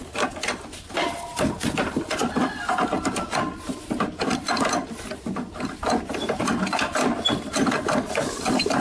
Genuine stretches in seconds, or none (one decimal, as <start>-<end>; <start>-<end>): 0.0-8.8